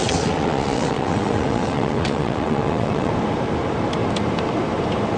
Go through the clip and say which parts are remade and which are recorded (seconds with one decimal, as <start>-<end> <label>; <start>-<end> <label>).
0.0-3.1 remade; 3.1-5.2 recorded